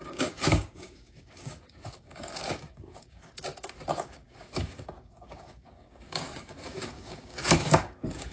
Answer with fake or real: fake